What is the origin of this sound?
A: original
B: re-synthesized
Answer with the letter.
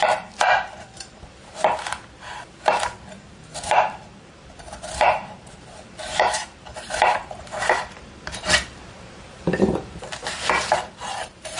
B